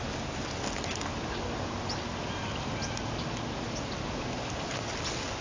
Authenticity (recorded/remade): recorded